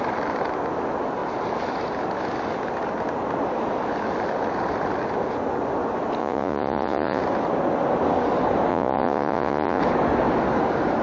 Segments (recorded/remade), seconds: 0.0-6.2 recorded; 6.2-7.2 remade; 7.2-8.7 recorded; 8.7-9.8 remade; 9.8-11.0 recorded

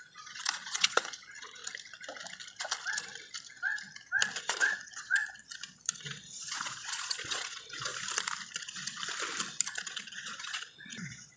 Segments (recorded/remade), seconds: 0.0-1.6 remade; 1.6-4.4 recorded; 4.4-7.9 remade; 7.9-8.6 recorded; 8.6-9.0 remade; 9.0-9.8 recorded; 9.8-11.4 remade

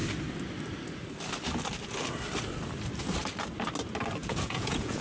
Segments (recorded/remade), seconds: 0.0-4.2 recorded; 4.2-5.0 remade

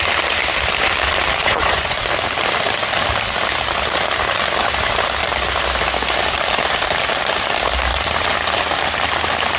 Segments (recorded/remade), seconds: 0.0-1.4 recorded; 1.4-2.0 remade; 2.0-9.6 recorded

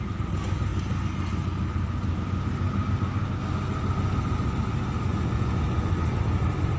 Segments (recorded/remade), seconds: 0.0-5.1 recorded; 5.1-6.2 remade; 6.2-6.8 recorded

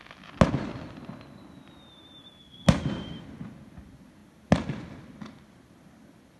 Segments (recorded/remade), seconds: 0.0-6.4 recorded

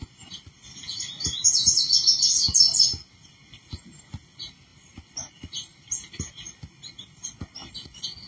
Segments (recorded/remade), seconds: 0.0-8.3 recorded

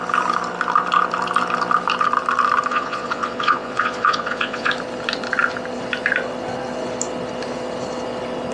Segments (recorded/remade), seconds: 0.0-2.7 recorded; 2.7-4.7 remade; 4.7-8.5 recorded